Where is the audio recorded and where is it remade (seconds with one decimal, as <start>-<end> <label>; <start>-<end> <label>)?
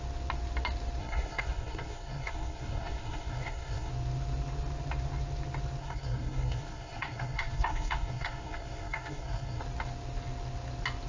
0.0-1.0 recorded; 1.0-3.9 remade; 3.9-5.8 recorded; 5.8-9.6 remade; 9.6-11.1 recorded